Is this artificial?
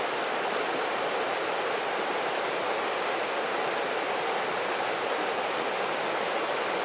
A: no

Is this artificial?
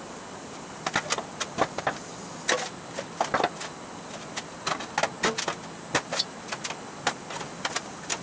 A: no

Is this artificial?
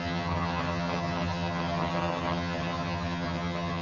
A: yes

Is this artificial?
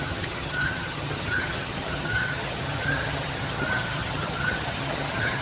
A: yes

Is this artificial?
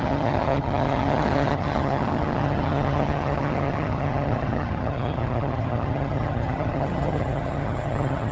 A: yes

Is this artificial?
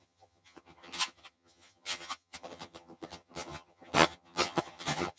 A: yes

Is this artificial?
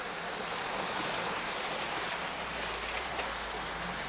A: no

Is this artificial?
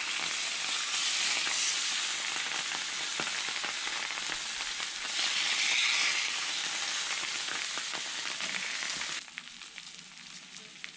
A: no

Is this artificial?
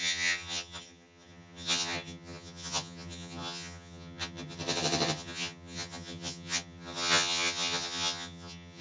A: yes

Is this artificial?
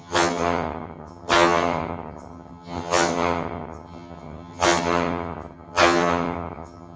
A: yes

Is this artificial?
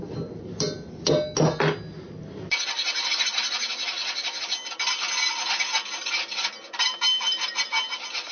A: no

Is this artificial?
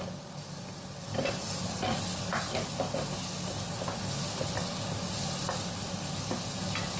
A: no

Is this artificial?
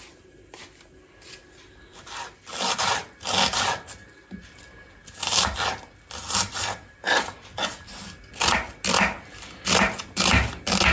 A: no